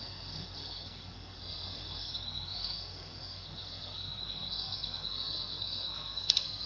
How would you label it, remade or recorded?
remade